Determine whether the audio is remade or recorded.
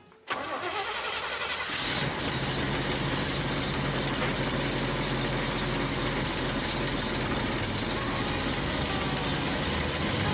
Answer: recorded